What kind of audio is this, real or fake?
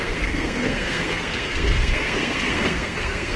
fake